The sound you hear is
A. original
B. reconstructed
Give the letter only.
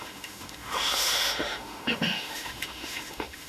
B